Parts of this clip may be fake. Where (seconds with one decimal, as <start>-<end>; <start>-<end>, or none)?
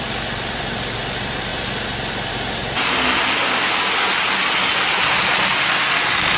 none